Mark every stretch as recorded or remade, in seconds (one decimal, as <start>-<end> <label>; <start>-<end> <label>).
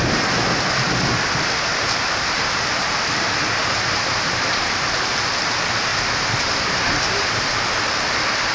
0.0-1.7 recorded; 1.7-3.0 remade; 3.0-3.6 recorded; 3.6-5.1 remade; 5.1-5.9 recorded; 5.9-7.8 remade; 7.8-8.5 recorded